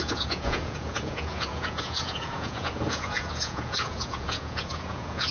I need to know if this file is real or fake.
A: fake